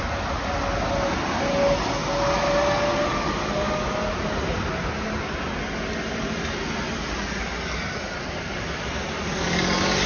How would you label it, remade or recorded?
recorded